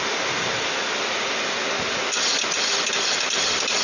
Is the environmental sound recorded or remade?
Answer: recorded